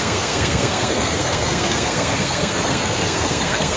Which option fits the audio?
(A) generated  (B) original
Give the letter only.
A